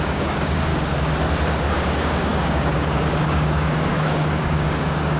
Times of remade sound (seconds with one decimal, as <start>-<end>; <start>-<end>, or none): 0.0-0.7; 1.7-5.2